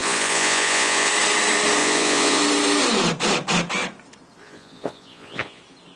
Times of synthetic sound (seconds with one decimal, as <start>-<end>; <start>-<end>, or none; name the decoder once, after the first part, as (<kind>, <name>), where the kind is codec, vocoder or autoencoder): 0.0-1.1 (vocoder, Vocos); 1.8-2.4; 4.4-5.6